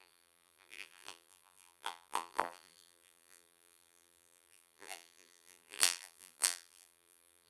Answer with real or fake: fake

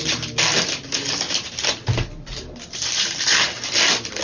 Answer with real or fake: fake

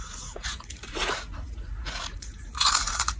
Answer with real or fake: fake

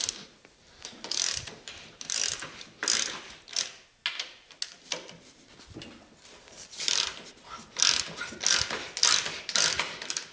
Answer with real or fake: real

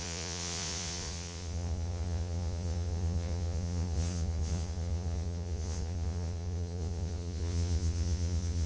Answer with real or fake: fake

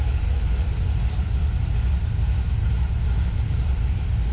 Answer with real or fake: fake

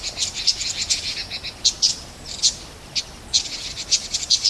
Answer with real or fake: real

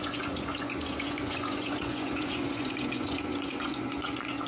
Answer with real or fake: fake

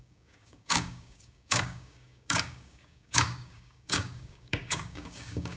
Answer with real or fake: fake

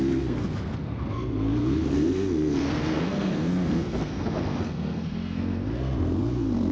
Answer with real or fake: fake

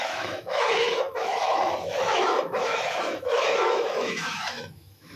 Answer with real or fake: fake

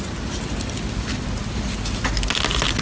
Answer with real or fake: real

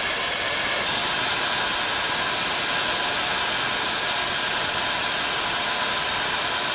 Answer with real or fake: real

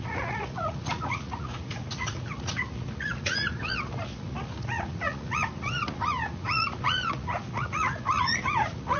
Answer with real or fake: fake